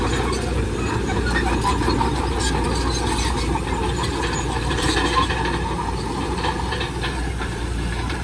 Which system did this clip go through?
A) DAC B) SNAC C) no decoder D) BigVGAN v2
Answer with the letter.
D